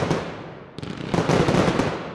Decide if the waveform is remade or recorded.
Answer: recorded